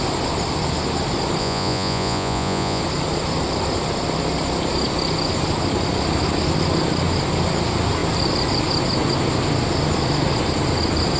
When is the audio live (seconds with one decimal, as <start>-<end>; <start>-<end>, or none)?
0.0-1.4; 2.8-11.2